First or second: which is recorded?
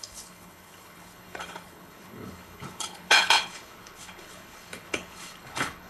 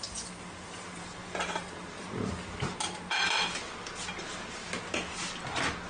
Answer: second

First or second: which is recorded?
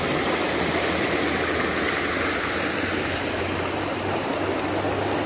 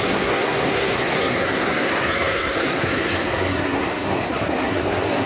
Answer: first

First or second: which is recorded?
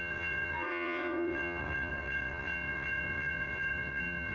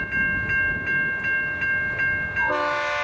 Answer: second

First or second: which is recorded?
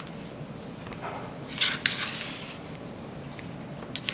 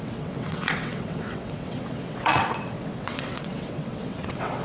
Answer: first